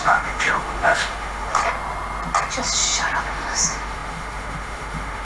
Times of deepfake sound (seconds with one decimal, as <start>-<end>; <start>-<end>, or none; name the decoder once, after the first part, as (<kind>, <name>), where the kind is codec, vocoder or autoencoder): 0.0-1.6 (autoencoder, DAC-VAE); 3.2-5.2